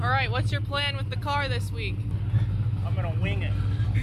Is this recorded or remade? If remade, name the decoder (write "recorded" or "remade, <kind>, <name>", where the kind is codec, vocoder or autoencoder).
recorded